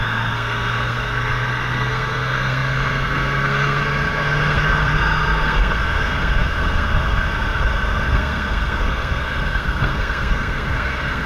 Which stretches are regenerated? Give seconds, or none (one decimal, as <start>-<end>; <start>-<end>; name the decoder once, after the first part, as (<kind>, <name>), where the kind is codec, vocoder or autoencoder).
0.0-11.3 (codec, SNAC)